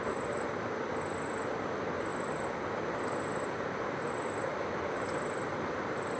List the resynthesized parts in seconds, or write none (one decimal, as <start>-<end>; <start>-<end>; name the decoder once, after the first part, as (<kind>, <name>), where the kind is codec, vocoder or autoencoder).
none